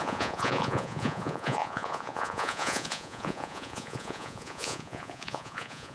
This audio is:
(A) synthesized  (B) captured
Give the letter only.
A